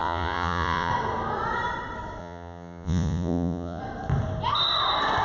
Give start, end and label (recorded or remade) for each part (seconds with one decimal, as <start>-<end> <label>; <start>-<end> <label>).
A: 0.0-0.9 remade; 0.9-2.2 recorded; 2.2-3.8 remade; 3.8-5.2 recorded